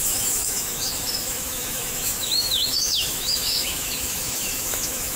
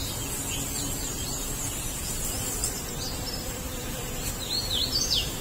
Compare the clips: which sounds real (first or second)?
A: second